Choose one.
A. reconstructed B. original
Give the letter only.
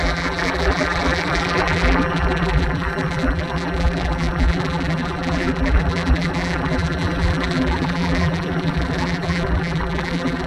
A